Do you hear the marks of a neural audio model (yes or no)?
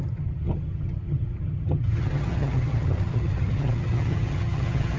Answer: yes